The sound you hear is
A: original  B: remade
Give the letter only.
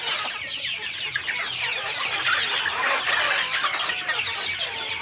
A